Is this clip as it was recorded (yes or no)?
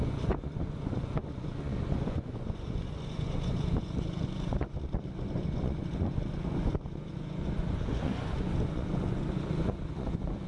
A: no